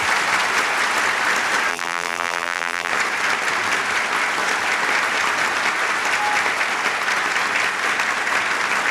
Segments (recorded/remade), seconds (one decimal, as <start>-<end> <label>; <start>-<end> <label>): 0.0-1.7 recorded; 1.7-2.9 remade; 2.9-8.9 recorded